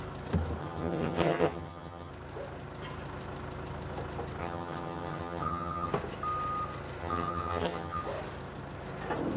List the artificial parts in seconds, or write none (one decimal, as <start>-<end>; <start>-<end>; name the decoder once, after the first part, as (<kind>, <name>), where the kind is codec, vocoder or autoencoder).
0.6-2.1 (vocoder, HiFi-GAN); 4.4-5.9; 7.0-8.0